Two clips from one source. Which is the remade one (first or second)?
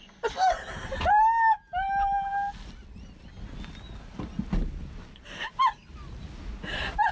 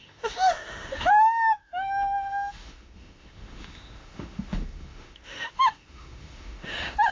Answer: second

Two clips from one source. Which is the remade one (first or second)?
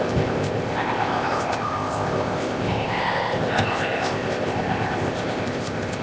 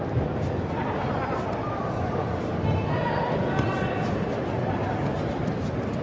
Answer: first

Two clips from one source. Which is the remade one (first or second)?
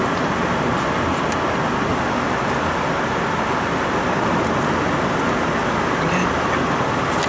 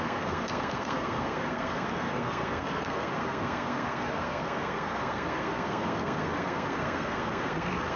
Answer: second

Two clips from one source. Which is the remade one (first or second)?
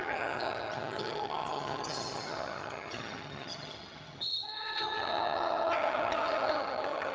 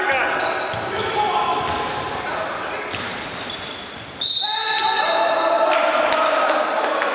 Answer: first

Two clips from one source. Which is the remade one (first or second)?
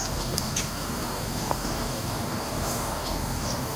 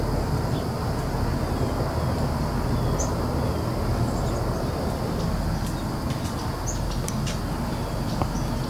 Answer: first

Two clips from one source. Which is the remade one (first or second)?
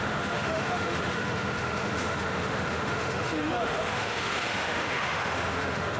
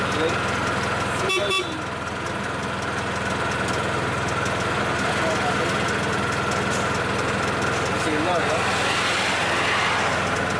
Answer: first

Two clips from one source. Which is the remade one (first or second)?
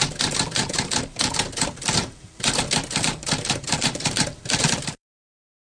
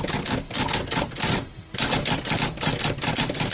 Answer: first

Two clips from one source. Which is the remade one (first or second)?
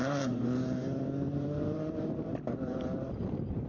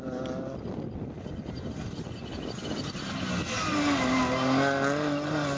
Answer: first